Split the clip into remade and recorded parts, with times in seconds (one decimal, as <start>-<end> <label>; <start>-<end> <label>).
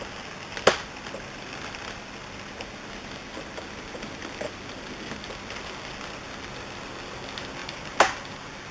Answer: 0.0-8.7 recorded